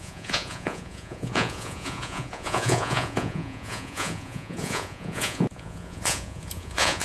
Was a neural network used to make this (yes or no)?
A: yes